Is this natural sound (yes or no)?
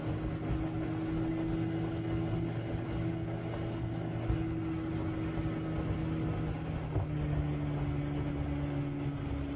yes